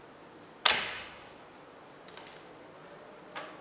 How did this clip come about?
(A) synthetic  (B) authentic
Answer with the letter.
B